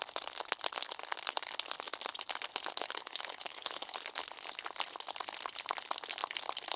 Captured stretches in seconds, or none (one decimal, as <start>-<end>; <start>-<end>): 0.0-2.5; 4.0-6.8